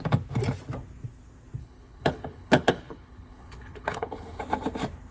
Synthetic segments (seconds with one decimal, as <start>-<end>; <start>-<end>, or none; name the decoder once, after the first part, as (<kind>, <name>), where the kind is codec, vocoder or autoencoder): 1.6-4.4 (codec, HILCodec)

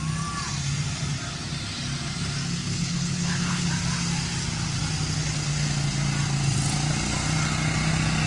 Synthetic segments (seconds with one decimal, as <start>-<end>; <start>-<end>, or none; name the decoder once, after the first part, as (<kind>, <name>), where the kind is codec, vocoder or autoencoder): 2.6-3.7 (codec, HILCodec)